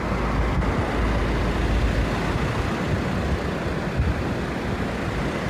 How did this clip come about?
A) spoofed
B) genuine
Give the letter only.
B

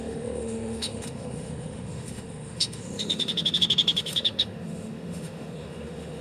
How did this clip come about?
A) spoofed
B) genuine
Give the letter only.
A